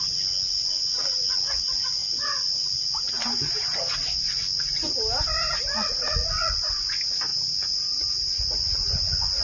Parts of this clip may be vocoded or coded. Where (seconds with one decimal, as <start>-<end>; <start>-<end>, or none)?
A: none